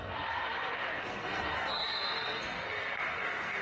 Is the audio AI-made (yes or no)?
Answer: yes